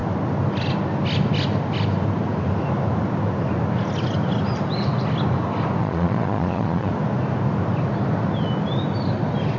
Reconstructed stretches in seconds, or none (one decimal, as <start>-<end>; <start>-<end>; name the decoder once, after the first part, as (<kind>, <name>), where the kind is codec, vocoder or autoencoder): 5.8-6.9 (vocoder, Vocos)